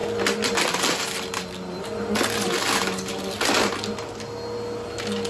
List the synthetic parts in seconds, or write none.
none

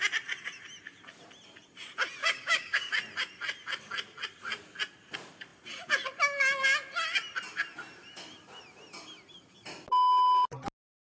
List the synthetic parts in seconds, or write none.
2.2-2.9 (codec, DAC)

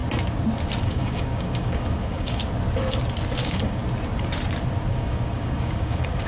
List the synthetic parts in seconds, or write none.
0.8-2.4 (codec, DAC); 3.4-3.8; 4.9-6.3

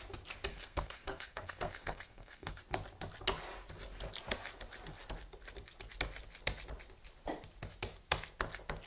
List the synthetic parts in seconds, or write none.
0.5-2.6 (codec, SNAC)

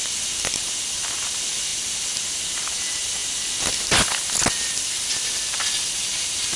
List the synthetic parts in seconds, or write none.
none

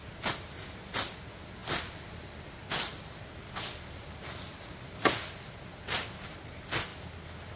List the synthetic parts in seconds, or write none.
none

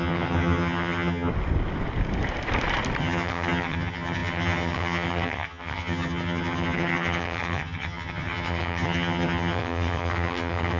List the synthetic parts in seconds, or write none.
0.0-1.3 (vocoder, HiFi-GAN); 3.0-10.8